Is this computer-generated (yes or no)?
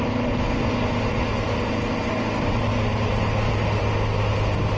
no